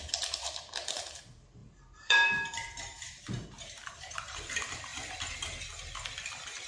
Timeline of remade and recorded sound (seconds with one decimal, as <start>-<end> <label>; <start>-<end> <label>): 0.0-0.4 recorded; 0.4-1.2 remade; 1.2-1.6 recorded; 1.6-4.5 remade; 4.5-6.7 recorded